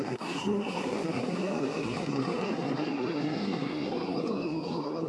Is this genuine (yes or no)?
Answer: no